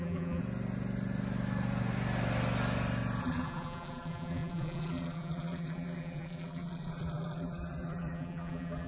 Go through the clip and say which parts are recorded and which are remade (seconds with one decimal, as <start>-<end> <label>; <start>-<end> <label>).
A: 0.0-0.4 remade; 0.4-3.2 recorded; 3.2-8.9 remade